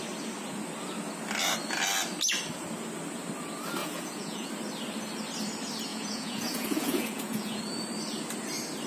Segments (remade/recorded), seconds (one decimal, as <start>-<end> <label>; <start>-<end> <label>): 0.0-3.8 recorded; 3.8-4.5 remade; 4.5-5.9 recorded; 5.9-7.6 remade; 7.6-8.9 recorded